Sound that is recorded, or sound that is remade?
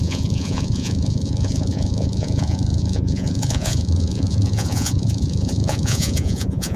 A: remade